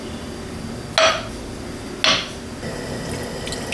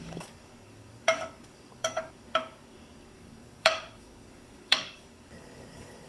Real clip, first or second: first